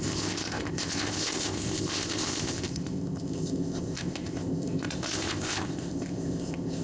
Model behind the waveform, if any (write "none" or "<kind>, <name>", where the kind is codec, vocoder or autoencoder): codec, ZipCodec